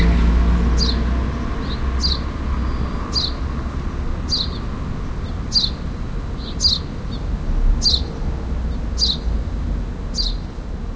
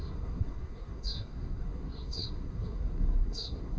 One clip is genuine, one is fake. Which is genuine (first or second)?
first